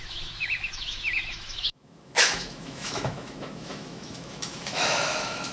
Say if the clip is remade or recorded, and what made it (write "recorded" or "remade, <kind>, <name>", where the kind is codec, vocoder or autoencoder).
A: remade, autoencoder, DAC-VAE